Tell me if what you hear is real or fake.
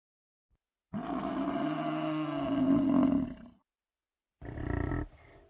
real